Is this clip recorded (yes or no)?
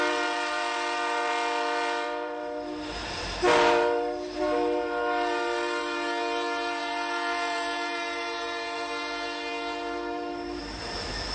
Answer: no